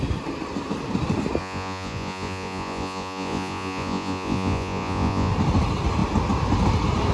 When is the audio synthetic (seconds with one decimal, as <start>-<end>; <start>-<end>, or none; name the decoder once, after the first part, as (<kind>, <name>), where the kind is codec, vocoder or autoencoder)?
1.4-5.3 (vocoder, Vocos)